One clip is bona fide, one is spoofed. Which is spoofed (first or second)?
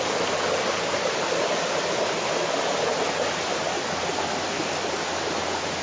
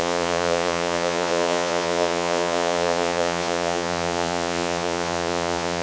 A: second